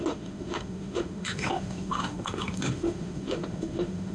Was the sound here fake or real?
fake